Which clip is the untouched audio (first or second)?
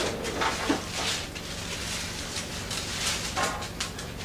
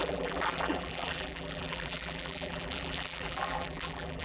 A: first